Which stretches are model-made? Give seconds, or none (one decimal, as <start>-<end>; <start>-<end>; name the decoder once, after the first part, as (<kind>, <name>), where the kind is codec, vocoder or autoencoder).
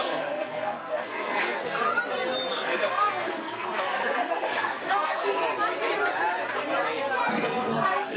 0.0-2.0 (codec, SNAC); 2.5-5.4; 7.3-8.2